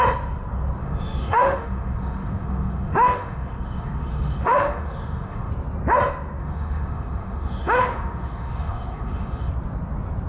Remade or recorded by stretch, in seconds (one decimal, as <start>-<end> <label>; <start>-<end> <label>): 0.0-0.8 recorded; 0.8-5.5 remade; 5.5-6.4 recorded; 6.4-9.5 remade; 9.5-10.3 recorded